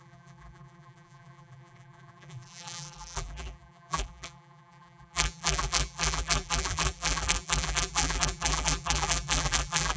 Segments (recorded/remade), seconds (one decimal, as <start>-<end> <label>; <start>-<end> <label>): 0.0-10.0 remade

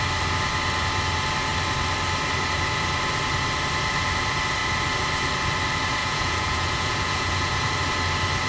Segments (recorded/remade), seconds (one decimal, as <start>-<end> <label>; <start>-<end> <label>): 0.0-6.0 recorded; 6.0-7.7 remade; 7.7-8.5 recorded

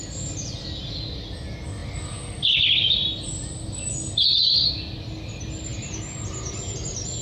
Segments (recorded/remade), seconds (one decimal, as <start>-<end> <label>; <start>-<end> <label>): 0.0-7.2 recorded

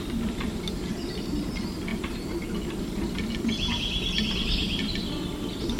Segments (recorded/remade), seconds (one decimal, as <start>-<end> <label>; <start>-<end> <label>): 0.0-5.8 recorded

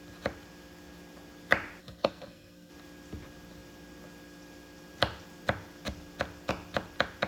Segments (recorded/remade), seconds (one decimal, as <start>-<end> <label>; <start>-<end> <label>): 0.0-1.8 recorded; 1.8-2.7 remade; 2.7-7.3 recorded

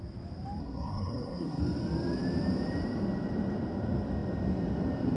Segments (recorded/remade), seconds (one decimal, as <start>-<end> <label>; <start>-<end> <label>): 0.0-0.6 recorded; 0.6-1.6 remade; 1.6-5.2 recorded